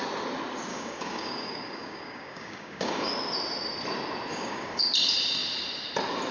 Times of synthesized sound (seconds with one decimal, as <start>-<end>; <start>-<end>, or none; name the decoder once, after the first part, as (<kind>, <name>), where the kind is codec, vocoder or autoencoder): 0.7-3.1 (codec, DAC); 4.3-4.8